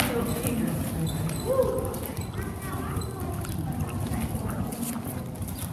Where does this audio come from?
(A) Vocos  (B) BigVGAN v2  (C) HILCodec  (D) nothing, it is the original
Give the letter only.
D